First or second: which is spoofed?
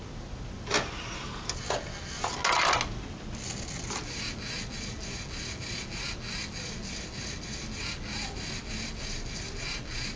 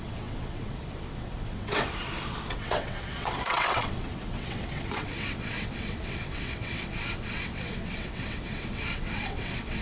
second